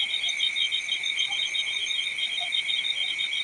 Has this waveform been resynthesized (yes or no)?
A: no